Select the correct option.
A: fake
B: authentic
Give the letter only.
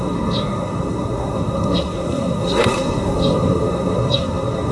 A